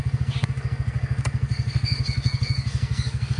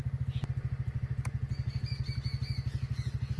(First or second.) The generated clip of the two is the first